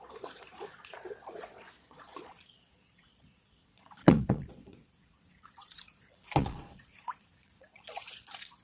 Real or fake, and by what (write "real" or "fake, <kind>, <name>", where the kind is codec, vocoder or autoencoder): fake, vocoder, Vocos